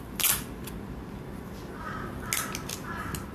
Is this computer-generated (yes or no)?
no